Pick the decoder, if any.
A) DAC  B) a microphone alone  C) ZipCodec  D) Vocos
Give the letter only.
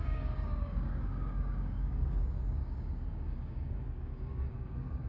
A